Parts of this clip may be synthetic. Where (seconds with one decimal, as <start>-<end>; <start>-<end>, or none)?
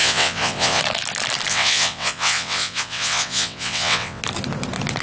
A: 0.0-0.8; 1.5-4.2